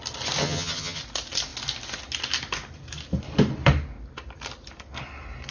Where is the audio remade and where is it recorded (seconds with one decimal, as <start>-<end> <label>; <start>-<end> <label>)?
0.0-0.4 recorded; 0.4-1.0 remade; 1.0-5.5 recorded